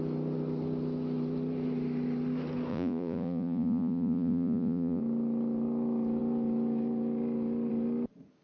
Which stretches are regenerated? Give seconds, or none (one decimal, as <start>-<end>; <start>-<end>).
2.7-5.0